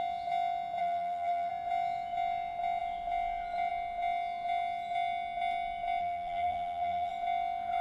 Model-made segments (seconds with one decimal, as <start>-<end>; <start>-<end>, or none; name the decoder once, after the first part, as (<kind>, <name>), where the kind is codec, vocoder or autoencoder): 0.8-1.5 (vocoder, BigVGAN v2); 6.0-7.1